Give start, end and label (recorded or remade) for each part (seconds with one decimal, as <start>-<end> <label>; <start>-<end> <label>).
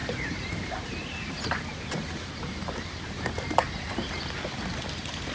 0.0-3.2 remade; 3.2-5.3 recorded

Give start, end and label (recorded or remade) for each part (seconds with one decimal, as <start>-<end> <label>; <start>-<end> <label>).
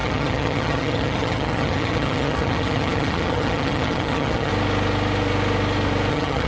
0.0-4.5 remade; 4.5-6.1 recorded; 6.1-6.5 remade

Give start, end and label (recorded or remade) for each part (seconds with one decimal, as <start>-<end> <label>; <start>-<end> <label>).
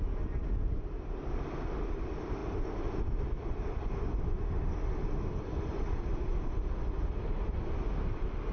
0.0-8.5 recorded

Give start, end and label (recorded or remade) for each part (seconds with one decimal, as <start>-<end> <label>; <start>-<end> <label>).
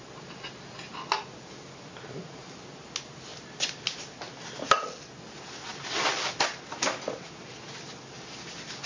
0.0-8.9 recorded